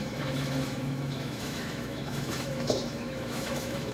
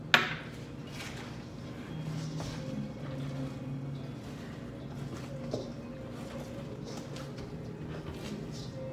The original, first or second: second